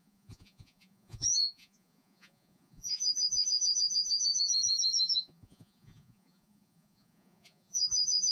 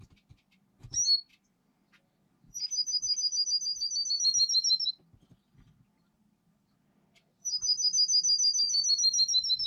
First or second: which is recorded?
second